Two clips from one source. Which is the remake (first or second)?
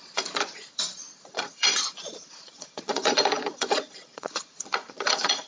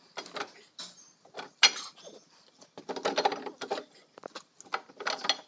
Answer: first